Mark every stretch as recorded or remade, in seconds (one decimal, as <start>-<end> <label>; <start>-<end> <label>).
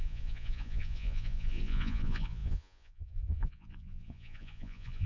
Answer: 0.0-5.1 remade